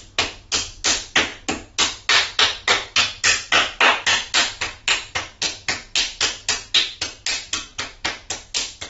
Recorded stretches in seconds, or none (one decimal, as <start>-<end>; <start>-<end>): 0.0-8.9